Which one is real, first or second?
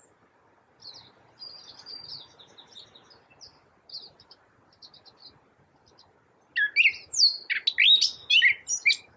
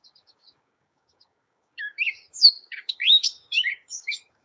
first